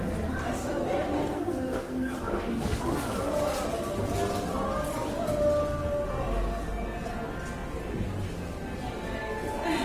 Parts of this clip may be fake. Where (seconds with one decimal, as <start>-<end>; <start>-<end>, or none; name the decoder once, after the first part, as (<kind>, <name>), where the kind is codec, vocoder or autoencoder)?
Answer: 1.2-2.8 (codec, SNAC)